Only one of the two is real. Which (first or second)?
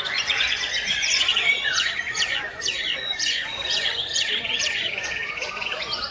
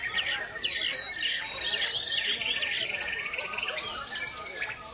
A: second